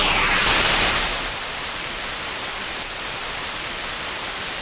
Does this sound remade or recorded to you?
remade